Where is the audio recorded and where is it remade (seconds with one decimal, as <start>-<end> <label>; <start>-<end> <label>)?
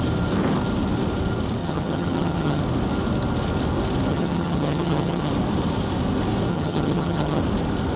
0.0-1.6 recorded; 1.6-2.6 remade; 2.6-4.1 recorded; 4.1-5.3 remade; 5.3-6.5 recorded; 6.5-7.4 remade; 7.4-8.0 recorded